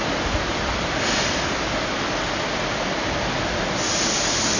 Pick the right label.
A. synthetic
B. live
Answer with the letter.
B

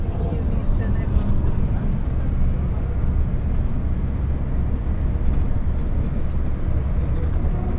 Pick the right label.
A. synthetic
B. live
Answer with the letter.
B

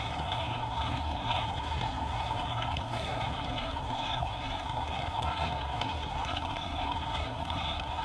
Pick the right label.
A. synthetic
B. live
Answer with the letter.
A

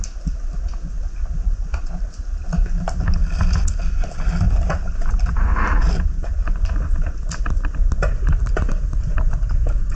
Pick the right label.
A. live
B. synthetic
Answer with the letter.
A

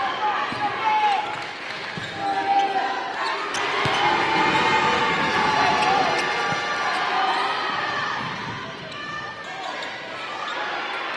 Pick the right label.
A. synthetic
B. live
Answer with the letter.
B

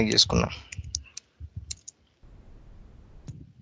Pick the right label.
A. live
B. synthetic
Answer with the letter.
A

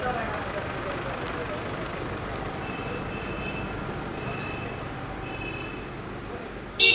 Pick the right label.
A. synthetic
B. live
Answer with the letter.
B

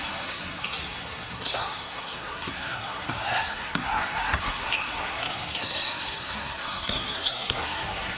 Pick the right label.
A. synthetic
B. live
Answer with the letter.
A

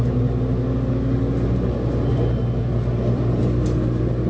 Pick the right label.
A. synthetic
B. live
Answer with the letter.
B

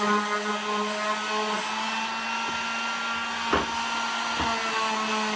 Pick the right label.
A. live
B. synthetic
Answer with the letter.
A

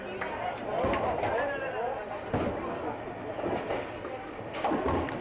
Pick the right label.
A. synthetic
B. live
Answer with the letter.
B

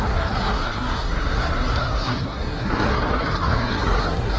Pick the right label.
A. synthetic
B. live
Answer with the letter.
A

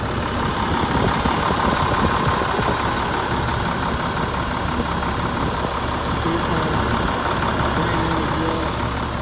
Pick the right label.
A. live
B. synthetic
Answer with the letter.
A